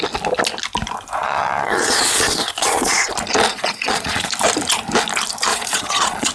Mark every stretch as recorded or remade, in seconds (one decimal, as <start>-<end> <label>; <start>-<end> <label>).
0.0-1.2 recorded; 1.2-3.1 remade; 3.1-3.5 recorded; 3.5-4.3 remade; 4.3-5.5 recorded; 5.5-6.3 remade